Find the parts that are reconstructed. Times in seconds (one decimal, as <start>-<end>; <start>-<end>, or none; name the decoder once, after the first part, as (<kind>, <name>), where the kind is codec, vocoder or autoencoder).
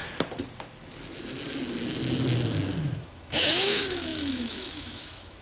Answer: 2.8-5.4 (autoencoder, DAC-VAE)